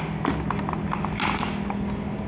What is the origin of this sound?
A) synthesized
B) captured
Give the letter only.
B